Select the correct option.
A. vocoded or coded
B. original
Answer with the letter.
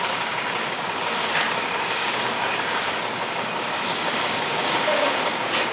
A